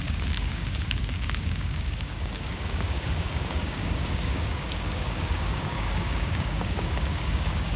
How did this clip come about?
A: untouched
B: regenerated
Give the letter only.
B